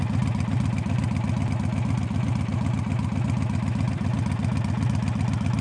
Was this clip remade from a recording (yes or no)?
no